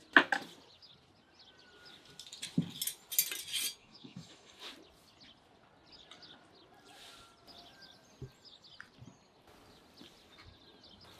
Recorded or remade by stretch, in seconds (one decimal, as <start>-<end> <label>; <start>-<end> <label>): 0.0-3.8 recorded; 3.8-4.6 remade; 4.6-11.2 recorded